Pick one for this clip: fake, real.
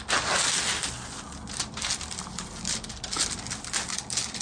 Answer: real